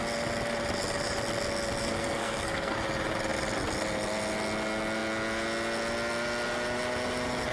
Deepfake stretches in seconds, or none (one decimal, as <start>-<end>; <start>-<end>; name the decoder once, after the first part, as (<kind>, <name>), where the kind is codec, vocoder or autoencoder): 1.8-2.8 (codec, SNAC)